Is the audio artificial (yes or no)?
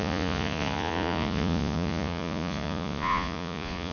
yes